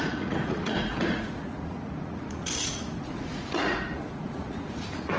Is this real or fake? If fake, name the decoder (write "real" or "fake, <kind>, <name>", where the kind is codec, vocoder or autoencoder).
fake, vocoder, Vocos